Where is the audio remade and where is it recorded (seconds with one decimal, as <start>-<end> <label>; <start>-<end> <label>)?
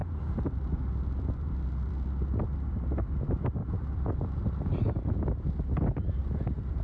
0.0-1.9 remade; 1.9-3.6 recorded; 3.6-6.8 remade